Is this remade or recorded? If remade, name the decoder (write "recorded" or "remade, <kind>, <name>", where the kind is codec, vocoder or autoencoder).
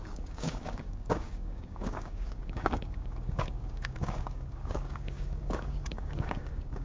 remade, codec, DAC